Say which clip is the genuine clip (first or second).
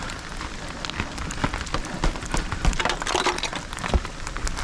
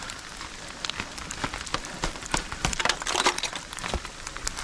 first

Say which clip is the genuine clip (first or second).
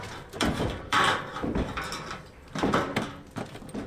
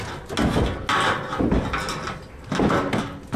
second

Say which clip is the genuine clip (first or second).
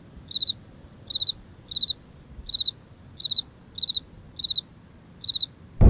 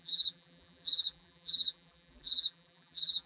first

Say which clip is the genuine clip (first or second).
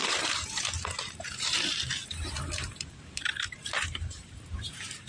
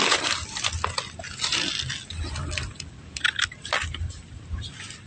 second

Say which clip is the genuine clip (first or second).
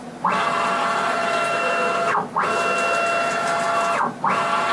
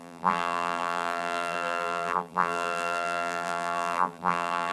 first